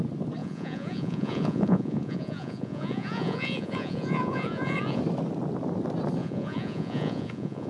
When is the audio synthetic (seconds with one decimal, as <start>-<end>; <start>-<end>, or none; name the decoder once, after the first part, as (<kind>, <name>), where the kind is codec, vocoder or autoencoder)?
0.4-5.0 (vocoder, Vocos); 6.2-7.7